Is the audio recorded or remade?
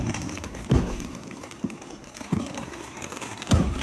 remade